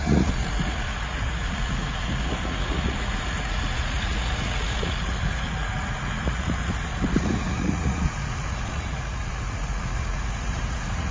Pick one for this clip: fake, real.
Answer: fake